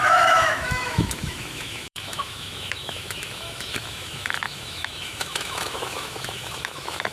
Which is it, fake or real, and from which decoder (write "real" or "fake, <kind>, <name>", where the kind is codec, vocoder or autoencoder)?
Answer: fake, autoencoder, DAC-VAE